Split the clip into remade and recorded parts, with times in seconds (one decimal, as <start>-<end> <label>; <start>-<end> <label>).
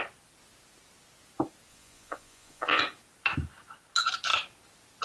0.0-1.7 recorded; 1.7-2.8 remade; 2.8-5.0 recorded